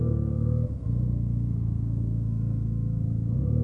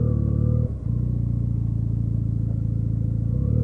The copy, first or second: first